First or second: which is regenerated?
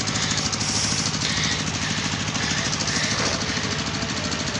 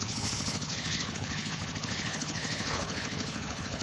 second